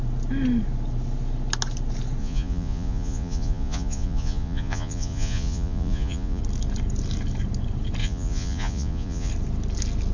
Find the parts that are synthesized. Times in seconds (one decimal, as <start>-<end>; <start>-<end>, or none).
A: 2.2-6.4; 8.0-9.3